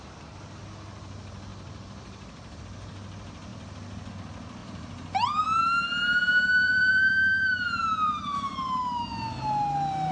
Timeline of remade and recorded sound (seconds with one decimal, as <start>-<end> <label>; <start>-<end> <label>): 0.0-1.5 recorded; 1.5-2.6 remade; 2.6-4.6 recorded; 4.6-9.0 remade; 9.0-10.1 recorded